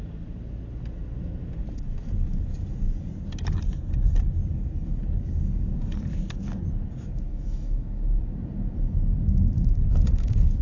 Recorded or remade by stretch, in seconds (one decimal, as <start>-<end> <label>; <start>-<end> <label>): 0.0-7.3 recorded; 7.3-8.2 remade; 8.2-10.6 recorded